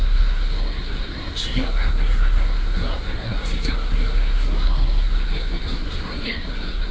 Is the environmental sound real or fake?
fake